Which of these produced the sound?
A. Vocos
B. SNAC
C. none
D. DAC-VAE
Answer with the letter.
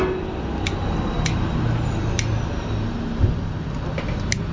C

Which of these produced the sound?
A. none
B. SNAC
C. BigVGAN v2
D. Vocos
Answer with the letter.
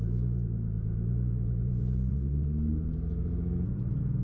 D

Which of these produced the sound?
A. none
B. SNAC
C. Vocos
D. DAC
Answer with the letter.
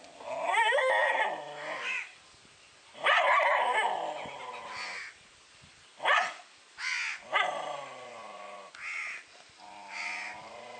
A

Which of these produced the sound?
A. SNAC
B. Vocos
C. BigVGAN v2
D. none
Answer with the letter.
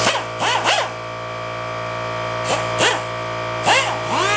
D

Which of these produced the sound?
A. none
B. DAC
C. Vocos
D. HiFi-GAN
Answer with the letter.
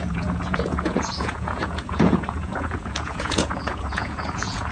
C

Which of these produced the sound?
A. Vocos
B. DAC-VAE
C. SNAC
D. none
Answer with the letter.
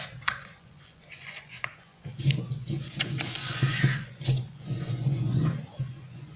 A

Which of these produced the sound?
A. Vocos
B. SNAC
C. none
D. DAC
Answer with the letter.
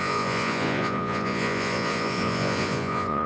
A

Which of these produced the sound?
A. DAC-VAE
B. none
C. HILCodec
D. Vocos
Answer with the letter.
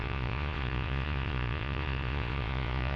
D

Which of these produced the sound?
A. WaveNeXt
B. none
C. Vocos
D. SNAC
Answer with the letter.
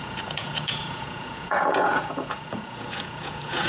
C